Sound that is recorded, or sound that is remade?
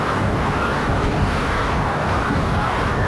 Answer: remade